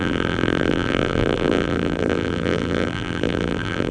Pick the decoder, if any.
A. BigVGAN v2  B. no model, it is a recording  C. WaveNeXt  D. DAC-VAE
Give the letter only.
A